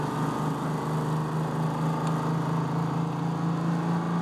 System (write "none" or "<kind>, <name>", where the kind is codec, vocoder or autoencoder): none